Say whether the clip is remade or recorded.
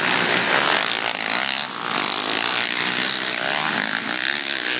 recorded